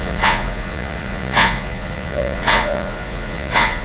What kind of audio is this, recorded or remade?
remade